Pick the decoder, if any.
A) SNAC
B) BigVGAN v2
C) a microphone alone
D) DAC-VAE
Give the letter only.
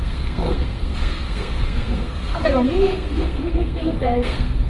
A